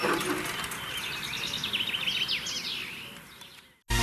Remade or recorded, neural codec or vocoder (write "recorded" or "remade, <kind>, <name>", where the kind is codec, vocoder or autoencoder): recorded